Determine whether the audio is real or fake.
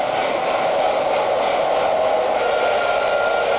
real